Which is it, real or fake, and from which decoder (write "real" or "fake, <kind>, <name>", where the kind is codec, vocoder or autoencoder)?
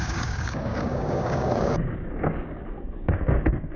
fake, codec, DAC